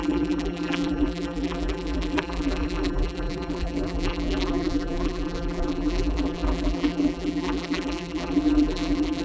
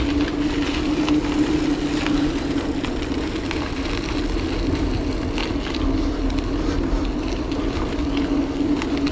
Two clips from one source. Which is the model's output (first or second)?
first